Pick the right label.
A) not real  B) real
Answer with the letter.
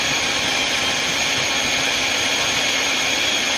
B